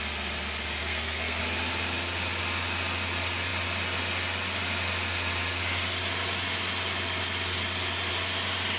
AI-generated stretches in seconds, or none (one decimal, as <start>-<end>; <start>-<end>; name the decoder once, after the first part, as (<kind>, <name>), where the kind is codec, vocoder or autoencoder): 0.9-1.4 (codec, SNAC)